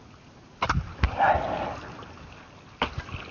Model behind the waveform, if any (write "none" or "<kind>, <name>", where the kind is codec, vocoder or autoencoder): none